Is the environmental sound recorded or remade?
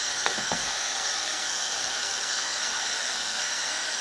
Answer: remade